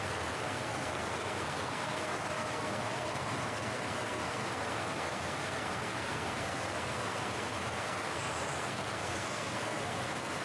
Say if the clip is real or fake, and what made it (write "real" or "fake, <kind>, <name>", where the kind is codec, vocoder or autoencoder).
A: fake, codec, SNAC